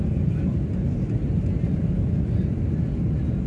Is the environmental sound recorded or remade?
recorded